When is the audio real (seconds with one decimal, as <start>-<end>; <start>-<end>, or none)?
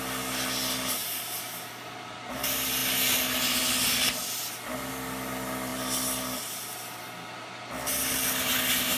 0.0-9.0